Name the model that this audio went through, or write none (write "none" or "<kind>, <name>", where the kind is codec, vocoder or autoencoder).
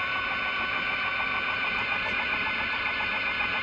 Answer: none